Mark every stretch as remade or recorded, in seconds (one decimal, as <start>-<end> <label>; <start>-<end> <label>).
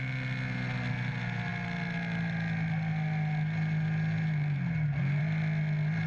0.0-6.1 recorded